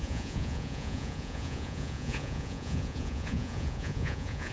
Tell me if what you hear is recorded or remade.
remade